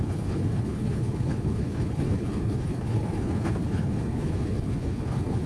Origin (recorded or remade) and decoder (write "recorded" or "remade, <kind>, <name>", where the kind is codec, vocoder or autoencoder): remade, codec, HILCodec